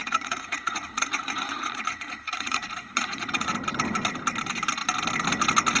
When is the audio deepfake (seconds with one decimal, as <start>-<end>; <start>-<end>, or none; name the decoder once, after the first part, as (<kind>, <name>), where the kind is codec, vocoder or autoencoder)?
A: 0.0-3.5 (vocoder, Vocos)